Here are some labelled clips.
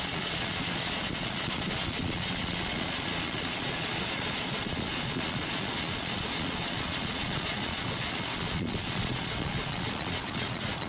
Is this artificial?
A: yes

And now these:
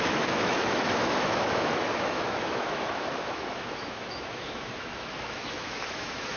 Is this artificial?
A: yes